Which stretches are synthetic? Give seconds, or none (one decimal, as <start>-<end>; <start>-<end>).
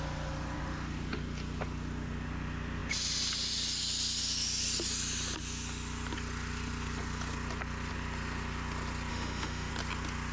9.1-9.7